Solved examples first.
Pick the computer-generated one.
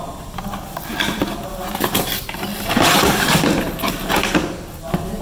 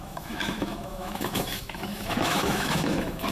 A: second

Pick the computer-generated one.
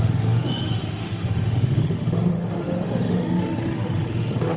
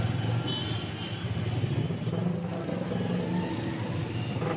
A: first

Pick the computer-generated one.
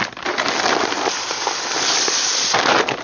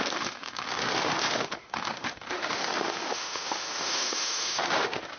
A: second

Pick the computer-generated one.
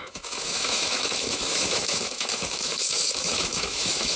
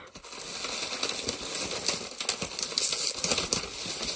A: first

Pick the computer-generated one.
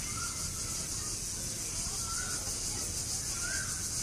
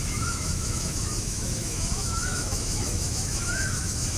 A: second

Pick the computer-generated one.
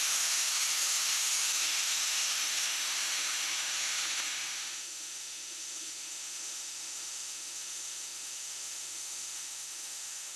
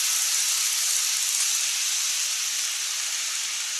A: first